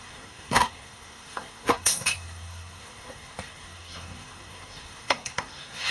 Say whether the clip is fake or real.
fake